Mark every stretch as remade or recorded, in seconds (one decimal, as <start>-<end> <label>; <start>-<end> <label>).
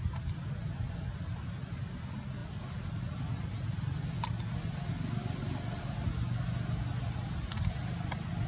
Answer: 0.0-8.5 recorded